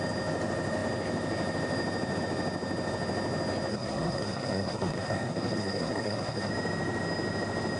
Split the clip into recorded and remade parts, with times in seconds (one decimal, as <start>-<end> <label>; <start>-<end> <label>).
0.0-3.7 recorded; 3.7-6.5 remade; 6.5-7.8 recorded